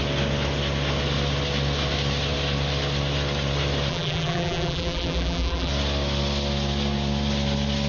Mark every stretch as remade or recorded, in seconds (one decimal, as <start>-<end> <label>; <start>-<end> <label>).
0.0-3.9 recorded; 3.9-5.7 remade; 5.7-7.9 recorded